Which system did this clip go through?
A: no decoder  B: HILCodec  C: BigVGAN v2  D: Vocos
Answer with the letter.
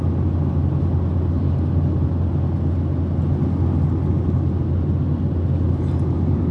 A